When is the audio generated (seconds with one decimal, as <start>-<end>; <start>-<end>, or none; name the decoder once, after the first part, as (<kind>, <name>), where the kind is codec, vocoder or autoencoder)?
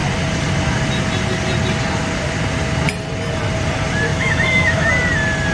4.1-4.9 (autoencoder, DAC-VAE)